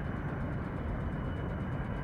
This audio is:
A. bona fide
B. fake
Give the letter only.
A